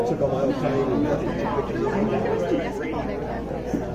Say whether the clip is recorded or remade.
recorded